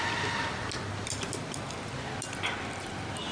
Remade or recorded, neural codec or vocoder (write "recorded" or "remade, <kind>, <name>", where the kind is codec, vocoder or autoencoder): recorded